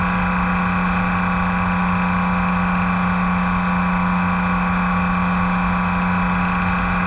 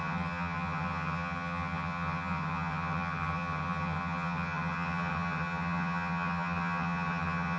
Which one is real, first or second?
first